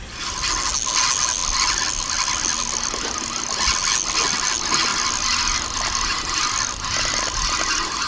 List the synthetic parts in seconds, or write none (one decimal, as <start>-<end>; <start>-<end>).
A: none